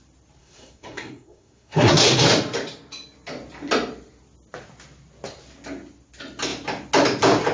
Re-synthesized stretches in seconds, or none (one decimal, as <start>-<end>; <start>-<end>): 0.4-2.1